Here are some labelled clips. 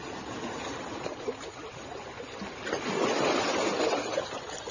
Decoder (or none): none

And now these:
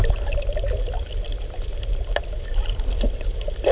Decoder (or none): none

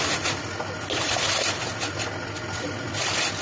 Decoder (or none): none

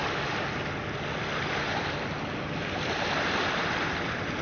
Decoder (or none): none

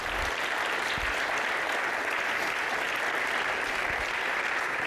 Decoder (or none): none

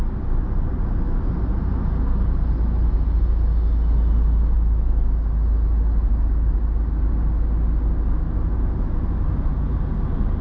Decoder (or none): none